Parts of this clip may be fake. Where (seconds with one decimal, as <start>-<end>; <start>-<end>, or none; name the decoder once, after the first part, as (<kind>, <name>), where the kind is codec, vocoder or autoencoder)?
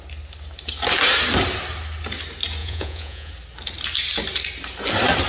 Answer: 2.6-3.3 (vocoder, Vocos)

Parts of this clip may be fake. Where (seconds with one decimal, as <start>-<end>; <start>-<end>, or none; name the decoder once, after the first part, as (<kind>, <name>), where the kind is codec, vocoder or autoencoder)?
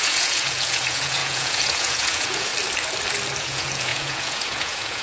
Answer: 0.0-2.5 (vocoder, Vocos); 3.4-5.0